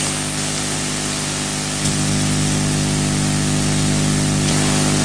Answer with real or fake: real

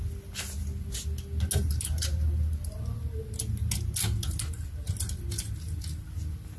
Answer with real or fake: real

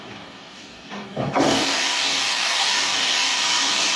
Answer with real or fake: fake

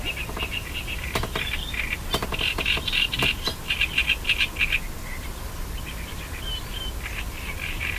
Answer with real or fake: real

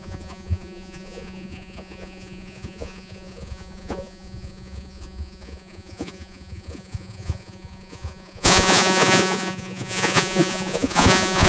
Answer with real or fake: fake